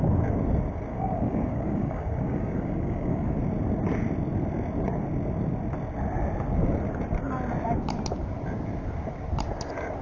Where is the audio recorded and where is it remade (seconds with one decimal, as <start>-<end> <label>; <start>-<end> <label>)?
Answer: 0.0-0.9 recorded; 0.9-3.4 remade; 3.4-10.0 recorded